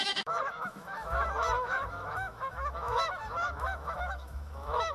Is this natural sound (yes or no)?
no